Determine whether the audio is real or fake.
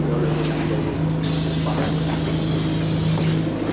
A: real